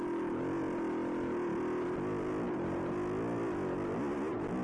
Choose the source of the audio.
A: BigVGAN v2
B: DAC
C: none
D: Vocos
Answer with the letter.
C